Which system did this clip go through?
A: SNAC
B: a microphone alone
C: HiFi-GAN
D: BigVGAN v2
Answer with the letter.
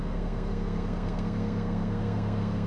A